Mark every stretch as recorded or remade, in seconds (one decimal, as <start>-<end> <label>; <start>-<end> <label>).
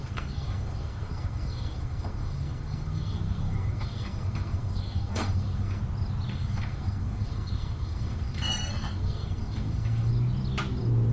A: 0.0-5.8 remade; 5.8-6.3 recorded; 6.3-10.1 remade; 10.1-11.1 recorded